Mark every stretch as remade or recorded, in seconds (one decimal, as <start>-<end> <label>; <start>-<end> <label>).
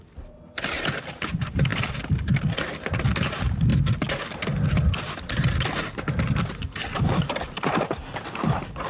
0.0-8.9 recorded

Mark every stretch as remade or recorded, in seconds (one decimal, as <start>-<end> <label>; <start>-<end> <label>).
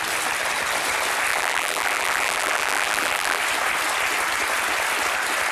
0.0-1.3 recorded; 1.3-3.4 remade; 3.4-5.5 recorded